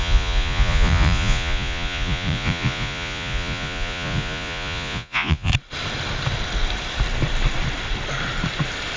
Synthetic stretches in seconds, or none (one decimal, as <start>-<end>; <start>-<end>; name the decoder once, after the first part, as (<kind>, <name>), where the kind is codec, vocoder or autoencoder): 0.0-5.5 (vocoder, Vocos)